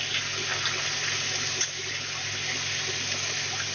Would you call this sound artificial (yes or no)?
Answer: no